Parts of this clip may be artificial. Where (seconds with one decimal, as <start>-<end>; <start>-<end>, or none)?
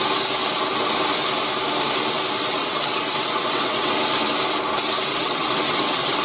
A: 2.6-3.9; 5.1-6.2